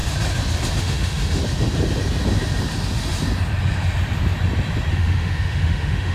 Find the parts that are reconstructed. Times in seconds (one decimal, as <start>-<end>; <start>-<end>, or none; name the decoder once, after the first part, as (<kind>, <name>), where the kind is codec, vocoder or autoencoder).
0.8-1.4 (autoencoder, DAC-VAE); 4.9-6.1

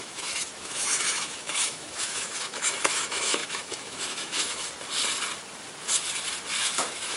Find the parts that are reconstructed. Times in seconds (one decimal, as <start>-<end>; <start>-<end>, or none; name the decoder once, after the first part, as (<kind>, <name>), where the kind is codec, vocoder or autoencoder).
0.0-4.6 (autoencoder, DAC-VAE); 6.5-7.2

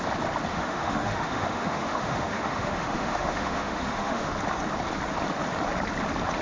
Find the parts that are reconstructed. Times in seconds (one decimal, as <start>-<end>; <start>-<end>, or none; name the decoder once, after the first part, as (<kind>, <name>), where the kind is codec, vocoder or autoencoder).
0.5-4.3 (autoencoder, DAC-VAE)

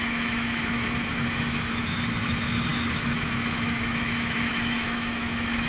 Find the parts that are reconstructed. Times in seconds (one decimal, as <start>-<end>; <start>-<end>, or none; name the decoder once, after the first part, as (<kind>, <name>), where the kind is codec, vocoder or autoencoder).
0.0-5.7 (autoencoder, DAC-VAE)

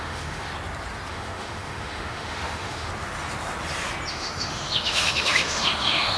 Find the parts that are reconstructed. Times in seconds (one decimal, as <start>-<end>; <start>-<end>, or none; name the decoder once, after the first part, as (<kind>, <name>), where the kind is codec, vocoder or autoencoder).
0.0-0.5 (autoencoder, DAC-VAE); 1.1-2.9; 4.1-6.2

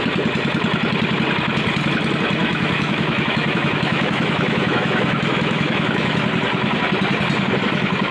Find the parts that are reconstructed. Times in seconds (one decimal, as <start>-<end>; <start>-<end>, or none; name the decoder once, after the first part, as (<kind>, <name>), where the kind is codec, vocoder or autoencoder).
2.4-6.2 (autoencoder, DAC-VAE)

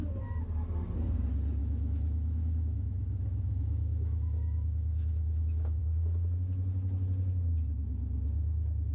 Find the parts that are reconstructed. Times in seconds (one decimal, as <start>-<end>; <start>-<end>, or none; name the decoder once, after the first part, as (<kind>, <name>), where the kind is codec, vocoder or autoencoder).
1.6-5.8 (autoencoder, DAC-VAE)